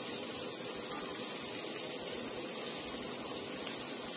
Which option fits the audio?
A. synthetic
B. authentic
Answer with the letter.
B